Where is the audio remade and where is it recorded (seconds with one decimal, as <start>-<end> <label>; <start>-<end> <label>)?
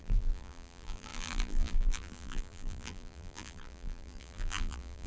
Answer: 0.0-5.1 remade